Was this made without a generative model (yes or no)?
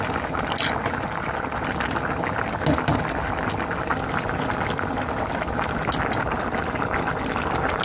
yes